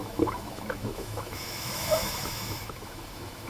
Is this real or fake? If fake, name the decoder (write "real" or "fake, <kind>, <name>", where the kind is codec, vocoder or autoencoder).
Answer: fake, autoencoder, DAC-VAE